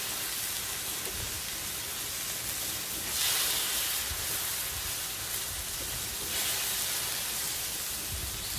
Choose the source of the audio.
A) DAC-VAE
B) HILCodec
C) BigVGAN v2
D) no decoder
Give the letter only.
D